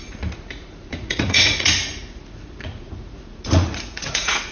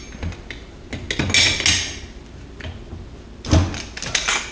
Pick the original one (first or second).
second